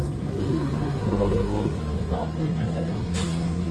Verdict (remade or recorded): remade